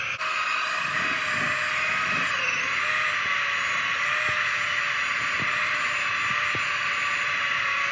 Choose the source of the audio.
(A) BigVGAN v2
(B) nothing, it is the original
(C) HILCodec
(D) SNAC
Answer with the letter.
B